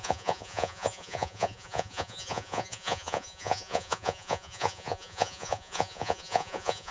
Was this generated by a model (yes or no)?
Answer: yes